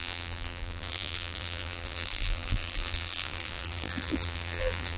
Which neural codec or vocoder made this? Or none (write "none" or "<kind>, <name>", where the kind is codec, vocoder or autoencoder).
vocoder, BigVGAN v2